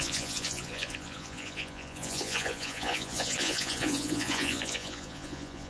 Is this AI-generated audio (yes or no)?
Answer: yes